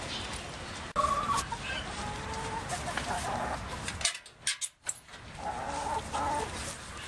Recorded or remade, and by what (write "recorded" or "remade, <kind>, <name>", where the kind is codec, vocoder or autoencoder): recorded